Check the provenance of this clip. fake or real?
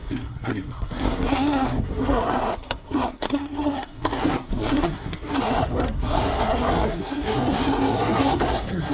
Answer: fake